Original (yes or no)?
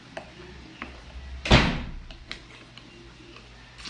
yes